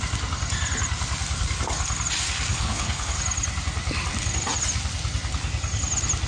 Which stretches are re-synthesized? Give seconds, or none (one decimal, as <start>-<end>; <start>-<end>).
2.5-3.2